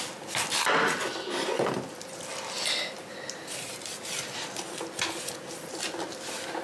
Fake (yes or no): no